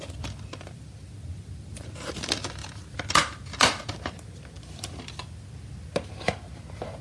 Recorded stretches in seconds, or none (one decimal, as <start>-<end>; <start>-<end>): 0.0-7.0